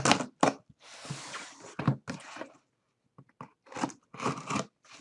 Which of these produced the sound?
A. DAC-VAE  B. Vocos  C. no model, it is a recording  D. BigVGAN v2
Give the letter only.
C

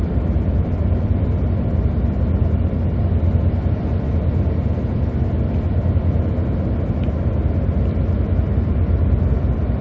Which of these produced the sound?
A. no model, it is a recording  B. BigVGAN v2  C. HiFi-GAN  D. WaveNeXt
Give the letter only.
B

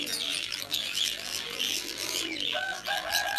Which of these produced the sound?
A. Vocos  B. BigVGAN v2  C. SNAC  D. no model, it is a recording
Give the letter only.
B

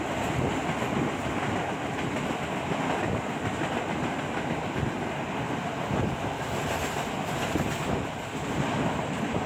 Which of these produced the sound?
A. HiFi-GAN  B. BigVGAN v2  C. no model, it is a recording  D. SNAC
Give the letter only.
C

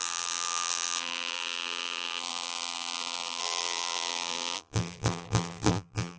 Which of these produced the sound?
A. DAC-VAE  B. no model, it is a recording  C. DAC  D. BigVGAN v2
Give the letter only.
D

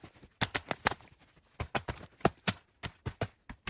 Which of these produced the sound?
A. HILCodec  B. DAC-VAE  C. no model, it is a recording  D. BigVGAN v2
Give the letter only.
C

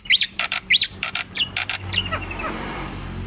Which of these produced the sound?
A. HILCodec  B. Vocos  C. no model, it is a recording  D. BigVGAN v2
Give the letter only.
D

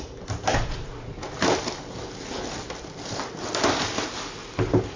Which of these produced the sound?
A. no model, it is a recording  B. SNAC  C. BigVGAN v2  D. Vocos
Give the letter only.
C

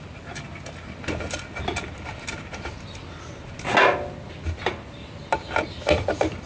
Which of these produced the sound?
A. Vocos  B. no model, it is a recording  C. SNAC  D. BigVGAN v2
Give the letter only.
B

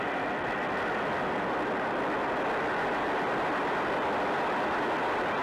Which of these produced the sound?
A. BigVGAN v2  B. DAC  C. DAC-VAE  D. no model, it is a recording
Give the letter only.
D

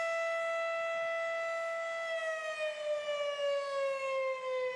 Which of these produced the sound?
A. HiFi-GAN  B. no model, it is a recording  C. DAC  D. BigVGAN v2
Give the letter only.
B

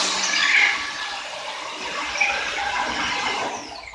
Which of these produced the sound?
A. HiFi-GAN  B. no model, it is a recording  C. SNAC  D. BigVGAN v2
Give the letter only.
D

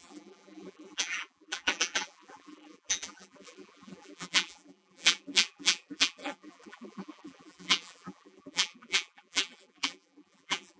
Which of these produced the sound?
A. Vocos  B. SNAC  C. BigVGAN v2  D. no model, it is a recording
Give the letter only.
C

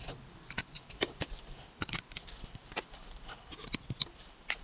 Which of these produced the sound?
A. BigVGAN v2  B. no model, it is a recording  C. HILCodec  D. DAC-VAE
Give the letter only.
B